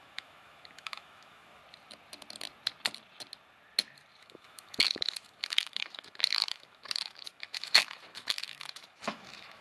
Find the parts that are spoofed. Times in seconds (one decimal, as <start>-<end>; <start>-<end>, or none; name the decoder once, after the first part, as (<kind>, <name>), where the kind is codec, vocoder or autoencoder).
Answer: 0.0-1.6 (autoencoder, DAC-VAE); 4.2-9.6